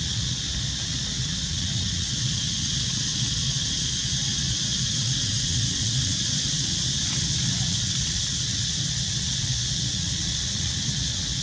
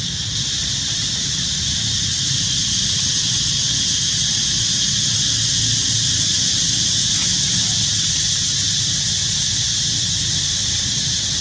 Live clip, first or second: second